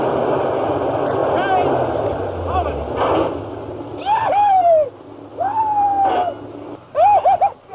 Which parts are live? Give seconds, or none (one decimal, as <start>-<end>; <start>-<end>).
0.0-7.7